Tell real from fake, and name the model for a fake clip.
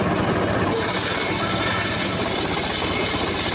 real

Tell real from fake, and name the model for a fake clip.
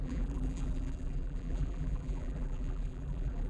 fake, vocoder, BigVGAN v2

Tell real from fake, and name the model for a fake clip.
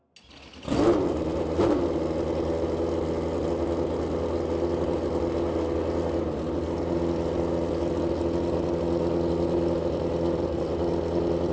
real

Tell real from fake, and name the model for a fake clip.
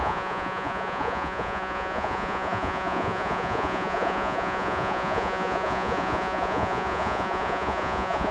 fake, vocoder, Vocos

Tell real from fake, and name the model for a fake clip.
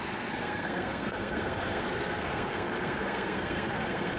fake, codec, SNAC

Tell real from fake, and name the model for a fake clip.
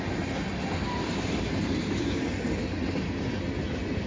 real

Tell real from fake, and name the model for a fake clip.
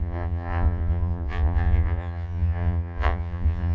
fake, vocoder, Vocos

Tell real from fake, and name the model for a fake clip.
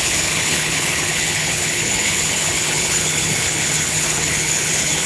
fake, codec, HILCodec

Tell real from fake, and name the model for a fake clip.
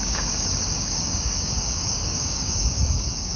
fake, codec, DAC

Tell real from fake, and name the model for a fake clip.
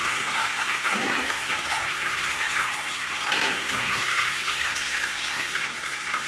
fake, codec, SNAC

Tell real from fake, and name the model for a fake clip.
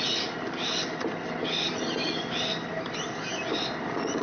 real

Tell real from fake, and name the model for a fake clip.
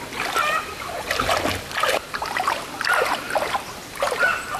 real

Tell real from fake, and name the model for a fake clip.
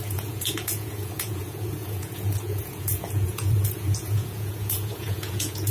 fake, vocoder, Vocos